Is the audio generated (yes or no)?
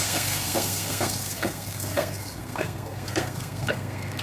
yes